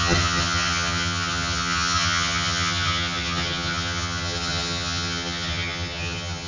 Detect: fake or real fake